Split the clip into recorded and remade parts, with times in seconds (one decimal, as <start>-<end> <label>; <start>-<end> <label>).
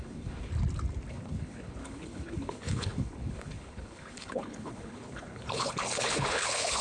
0.0-0.5 remade; 0.5-1.1 recorded; 1.1-6.8 remade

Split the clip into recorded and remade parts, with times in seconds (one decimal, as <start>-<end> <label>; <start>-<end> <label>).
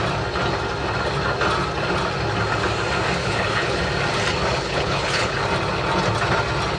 0.0-3.2 recorded; 3.2-3.8 remade; 3.8-4.6 recorded; 4.6-5.4 remade; 5.4-6.8 recorded